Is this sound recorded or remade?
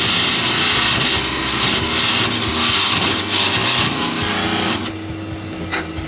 recorded